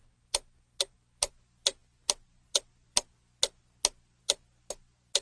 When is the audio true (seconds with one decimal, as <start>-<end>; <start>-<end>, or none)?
0.0-5.2

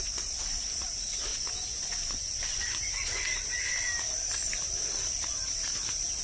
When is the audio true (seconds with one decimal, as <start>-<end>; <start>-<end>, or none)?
0.0-1.3; 3.6-6.2

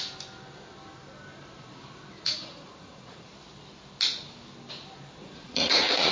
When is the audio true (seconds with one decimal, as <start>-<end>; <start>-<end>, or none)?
0.0-2.1; 3.3-5.2

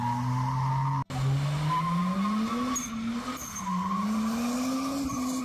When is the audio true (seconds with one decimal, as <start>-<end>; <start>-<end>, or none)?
0.0-5.4

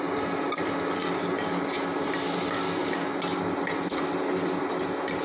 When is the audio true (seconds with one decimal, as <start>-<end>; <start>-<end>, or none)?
0.0-5.2

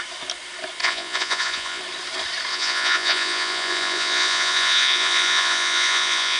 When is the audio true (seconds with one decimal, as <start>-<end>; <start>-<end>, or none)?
0.0-0.8; 1.8-2.5

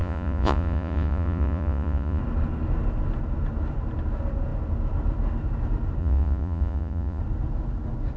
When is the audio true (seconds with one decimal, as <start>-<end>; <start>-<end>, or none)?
2.2-6.0; 7.2-8.2

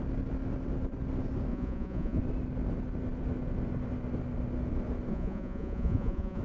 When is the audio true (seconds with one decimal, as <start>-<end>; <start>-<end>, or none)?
0.0-1.5; 2.2-5.1